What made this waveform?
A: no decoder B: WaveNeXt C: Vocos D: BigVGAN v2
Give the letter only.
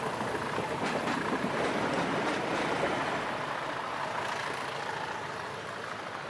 A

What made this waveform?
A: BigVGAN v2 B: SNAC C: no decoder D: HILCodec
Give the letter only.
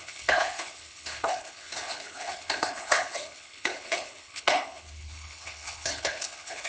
D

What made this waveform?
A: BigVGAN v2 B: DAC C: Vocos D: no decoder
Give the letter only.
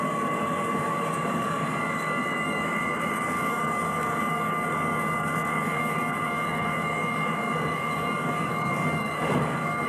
B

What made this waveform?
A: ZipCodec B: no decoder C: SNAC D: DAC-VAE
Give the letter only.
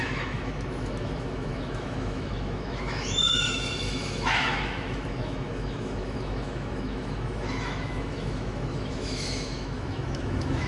D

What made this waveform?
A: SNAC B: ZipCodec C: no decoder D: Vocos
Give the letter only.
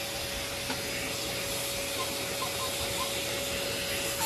C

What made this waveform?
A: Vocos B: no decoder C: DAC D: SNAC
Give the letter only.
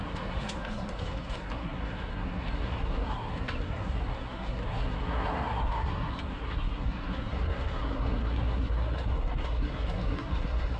D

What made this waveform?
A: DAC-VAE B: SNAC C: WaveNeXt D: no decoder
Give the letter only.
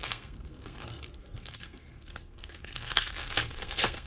B